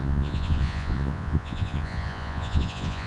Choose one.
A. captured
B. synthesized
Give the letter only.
B